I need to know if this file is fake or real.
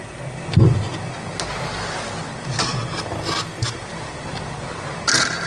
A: real